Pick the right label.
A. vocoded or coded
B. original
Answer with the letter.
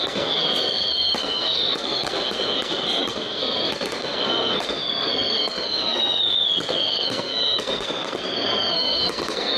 A